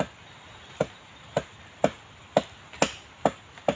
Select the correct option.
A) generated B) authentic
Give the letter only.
B